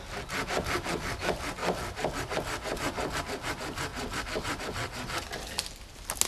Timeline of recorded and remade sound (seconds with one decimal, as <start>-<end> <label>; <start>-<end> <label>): 0.0-6.3 recorded

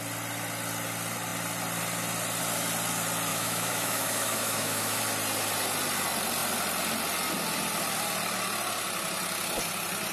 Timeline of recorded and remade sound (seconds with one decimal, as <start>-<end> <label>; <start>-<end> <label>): 0.0-3.3 recorded; 3.3-5.0 remade; 5.0-10.1 recorded

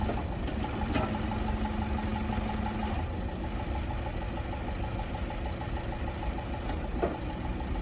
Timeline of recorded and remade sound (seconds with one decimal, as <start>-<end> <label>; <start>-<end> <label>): 0.0-7.8 recorded

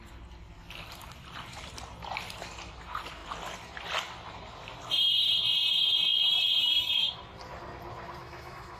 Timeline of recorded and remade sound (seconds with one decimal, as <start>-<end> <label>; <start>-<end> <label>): 0.0-6.6 recorded; 6.6-7.2 remade; 7.2-8.2 recorded; 8.2-8.8 remade

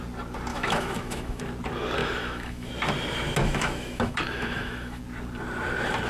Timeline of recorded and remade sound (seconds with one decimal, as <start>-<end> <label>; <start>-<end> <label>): 0.0-0.5 recorded; 0.5-1.4 remade; 1.4-2.0 recorded; 2.0-2.7 remade; 2.7-3.4 recorded; 3.4-5.0 remade; 5.0-6.1 recorded

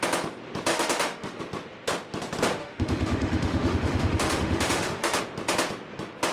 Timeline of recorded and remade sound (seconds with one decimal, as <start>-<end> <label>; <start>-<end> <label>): 0.0-0.7 recorded; 0.7-1.4 remade; 1.4-2.6 recorded; 2.6-5.2 remade; 5.2-6.3 recorded

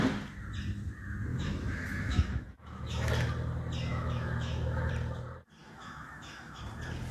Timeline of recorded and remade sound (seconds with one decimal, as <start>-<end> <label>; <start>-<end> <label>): 0.0-1.3 recorded; 1.3-3.1 remade; 3.1-3.9 recorded; 3.9-4.9 remade; 4.9-5.6 recorded; 5.6-6.6 remade; 6.6-7.1 recorded

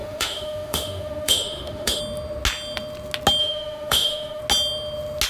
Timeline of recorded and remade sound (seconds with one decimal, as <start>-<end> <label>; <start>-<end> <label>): 0.0-2.0 remade; 2.0-3.4 recorded; 3.4-4.4 remade; 4.4-5.3 recorded